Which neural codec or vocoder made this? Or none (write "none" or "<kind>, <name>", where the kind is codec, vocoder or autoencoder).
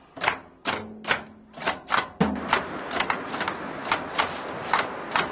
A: none